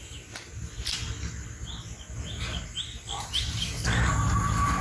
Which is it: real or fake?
real